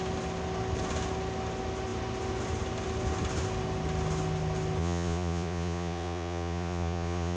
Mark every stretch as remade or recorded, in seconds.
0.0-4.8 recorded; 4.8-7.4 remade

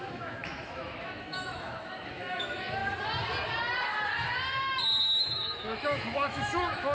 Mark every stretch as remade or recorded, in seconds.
0.0-2.8 remade; 2.8-4.8 recorded; 4.8-6.9 remade

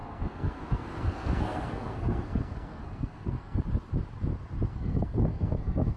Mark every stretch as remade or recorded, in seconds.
0.0-3.6 remade; 3.6-4.7 recorded; 4.7-6.0 remade